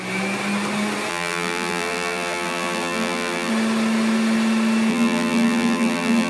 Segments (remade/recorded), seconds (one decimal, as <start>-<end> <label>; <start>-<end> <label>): 0.0-1.1 recorded; 1.1-3.5 remade; 3.5-4.9 recorded; 4.9-6.3 remade